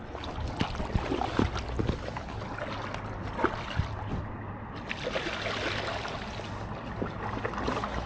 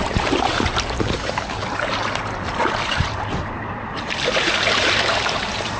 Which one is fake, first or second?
second